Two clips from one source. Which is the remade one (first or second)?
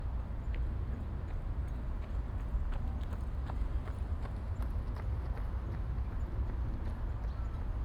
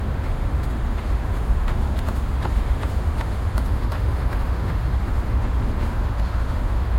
second